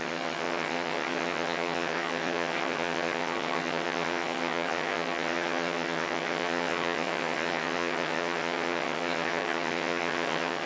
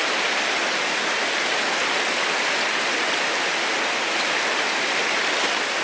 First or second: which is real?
second